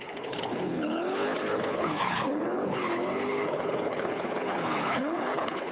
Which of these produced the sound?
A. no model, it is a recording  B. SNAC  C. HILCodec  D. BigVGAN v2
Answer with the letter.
C